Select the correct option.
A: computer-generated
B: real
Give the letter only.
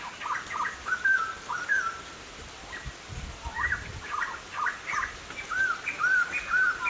B